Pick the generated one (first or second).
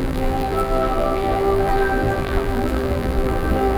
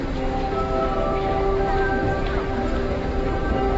first